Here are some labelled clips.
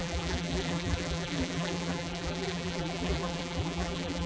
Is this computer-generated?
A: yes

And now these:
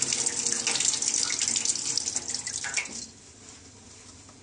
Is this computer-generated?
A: no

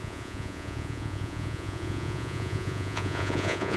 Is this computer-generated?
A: yes